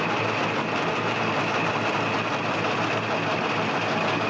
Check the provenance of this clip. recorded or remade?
recorded